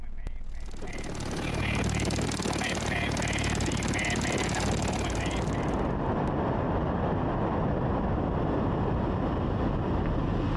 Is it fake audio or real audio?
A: real